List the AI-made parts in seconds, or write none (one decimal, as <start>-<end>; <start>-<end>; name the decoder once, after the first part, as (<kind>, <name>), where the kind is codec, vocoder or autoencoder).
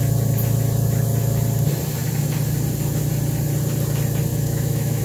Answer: 4.3-5.0 (autoencoder, DAC-VAE)